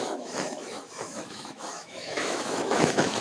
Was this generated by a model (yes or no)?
yes